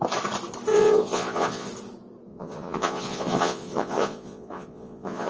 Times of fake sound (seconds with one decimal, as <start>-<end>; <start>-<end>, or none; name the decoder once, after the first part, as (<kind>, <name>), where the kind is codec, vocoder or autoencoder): 0.7-1.7 (vocoder, Vocos); 2.3-5.3